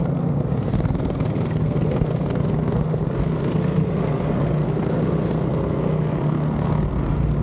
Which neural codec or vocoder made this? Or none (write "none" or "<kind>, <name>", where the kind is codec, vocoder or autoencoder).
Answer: codec, SNAC